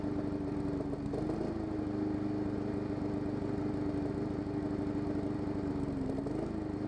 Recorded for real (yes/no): yes